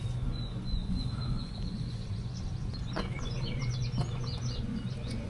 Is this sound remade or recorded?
remade